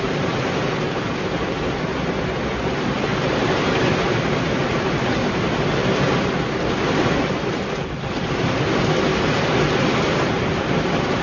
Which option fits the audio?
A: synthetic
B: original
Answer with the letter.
B